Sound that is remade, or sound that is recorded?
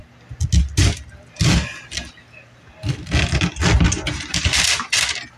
recorded